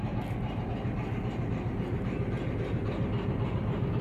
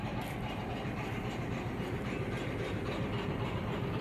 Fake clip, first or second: second